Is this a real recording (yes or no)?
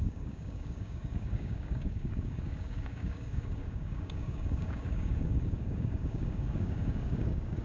no